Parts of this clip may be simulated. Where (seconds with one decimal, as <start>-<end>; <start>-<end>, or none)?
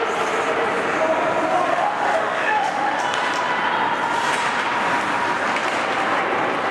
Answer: 1.7-3.0